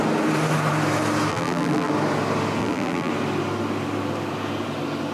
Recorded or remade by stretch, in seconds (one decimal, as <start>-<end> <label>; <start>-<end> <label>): 0.0-1.3 recorded; 1.3-1.9 remade; 1.9-2.6 recorded; 2.6-3.1 remade; 3.1-5.1 recorded